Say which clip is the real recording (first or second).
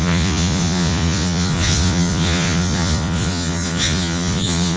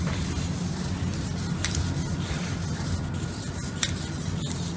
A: second